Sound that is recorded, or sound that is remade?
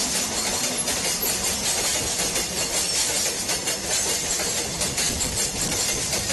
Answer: recorded